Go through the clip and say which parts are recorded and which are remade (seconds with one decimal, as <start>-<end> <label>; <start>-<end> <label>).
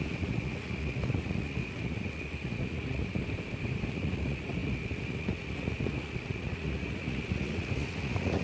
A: 0.0-3.2 remade; 3.2-3.9 recorded; 3.9-8.4 remade